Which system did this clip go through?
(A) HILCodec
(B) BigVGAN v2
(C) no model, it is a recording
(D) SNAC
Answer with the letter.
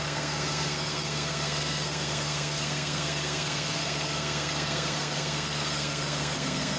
D